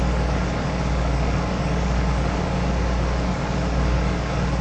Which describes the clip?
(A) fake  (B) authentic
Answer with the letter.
A